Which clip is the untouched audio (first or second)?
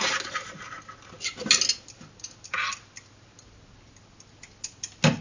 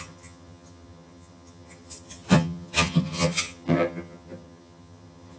first